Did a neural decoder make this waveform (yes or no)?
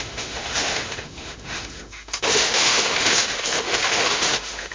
yes